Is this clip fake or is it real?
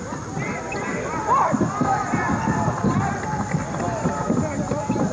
real